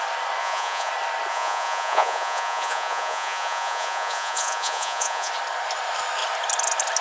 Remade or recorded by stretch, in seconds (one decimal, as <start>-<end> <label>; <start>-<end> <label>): 0.0-0.4 recorded; 0.4-0.9 remade; 0.9-1.3 recorded; 1.3-5.3 remade; 5.3-7.0 recorded